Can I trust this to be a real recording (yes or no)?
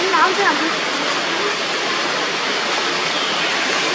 yes